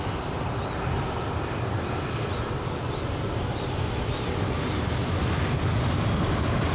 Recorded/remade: recorded